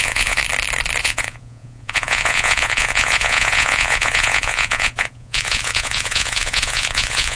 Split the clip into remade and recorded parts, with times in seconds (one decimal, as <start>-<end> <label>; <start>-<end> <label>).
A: 0.0-0.4 remade; 0.4-1.0 recorded; 1.0-7.4 remade